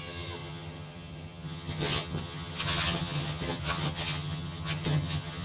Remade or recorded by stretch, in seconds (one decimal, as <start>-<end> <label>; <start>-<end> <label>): 0.0-5.4 remade